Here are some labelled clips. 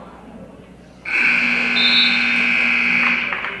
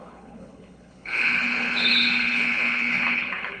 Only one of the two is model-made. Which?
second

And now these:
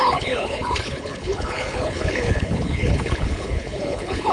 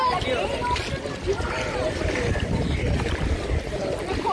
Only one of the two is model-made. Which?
first